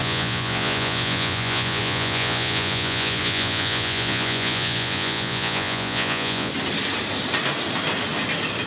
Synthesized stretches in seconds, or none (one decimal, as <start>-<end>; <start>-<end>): 0.0-6.5